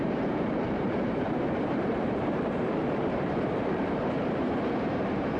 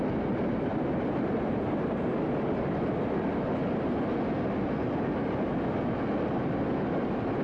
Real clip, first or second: second